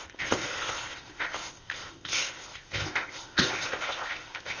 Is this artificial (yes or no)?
yes